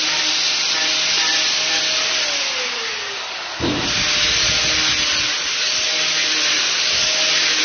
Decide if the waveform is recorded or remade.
recorded